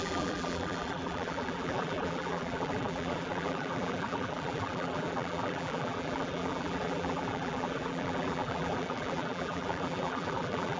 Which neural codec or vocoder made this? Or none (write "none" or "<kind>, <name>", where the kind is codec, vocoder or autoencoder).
vocoder, BigVGAN v2